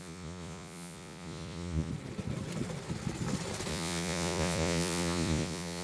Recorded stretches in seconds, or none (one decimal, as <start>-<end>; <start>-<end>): 1.9-3.7